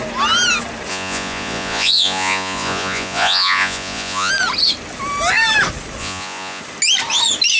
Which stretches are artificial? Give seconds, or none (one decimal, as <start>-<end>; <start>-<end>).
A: 0.9-4.3; 6.0-6.6